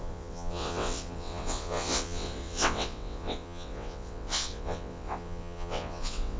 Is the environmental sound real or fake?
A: fake